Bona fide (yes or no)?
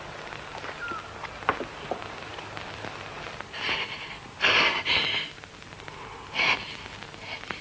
yes